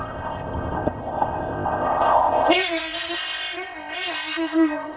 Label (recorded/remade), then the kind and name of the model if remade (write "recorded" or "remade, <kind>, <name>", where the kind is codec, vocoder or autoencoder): remade, codec, ZipCodec